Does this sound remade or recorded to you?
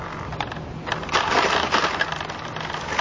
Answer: remade